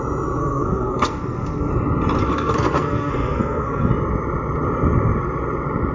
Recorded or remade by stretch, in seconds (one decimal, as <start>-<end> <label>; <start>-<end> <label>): 0.0-0.4 recorded; 0.4-1.7 remade; 1.7-2.2 recorded; 2.2-3.9 remade; 3.9-5.9 recorded